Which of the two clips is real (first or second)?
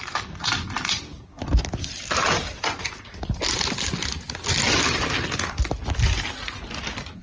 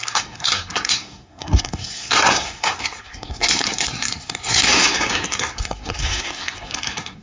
first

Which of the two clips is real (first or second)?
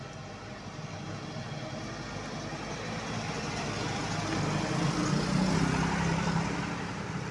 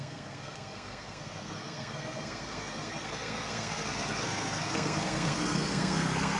first